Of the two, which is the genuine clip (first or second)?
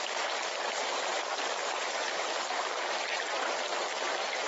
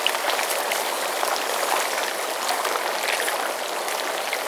second